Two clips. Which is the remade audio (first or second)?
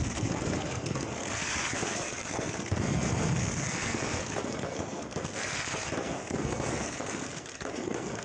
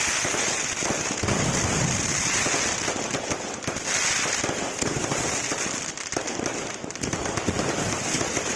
first